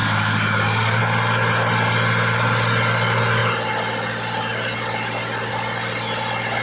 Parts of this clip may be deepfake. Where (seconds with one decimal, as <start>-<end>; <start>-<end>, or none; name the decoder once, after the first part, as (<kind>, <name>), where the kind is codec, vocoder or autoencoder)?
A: 0.0-1.0 (codec, DAC)